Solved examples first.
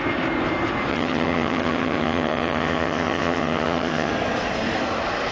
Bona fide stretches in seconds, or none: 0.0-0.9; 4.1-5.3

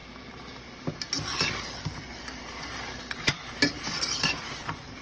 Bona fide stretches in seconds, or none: 1.0-2.1; 4.3-5.0

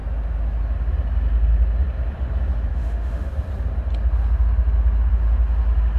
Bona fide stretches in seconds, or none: 0.0-2.7; 3.3-6.0

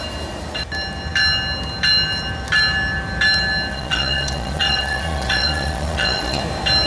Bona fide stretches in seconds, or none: 0.0-3.7; 6.4-6.9